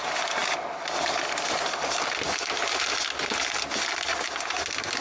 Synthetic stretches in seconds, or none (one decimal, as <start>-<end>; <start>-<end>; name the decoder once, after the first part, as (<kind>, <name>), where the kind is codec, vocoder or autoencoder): none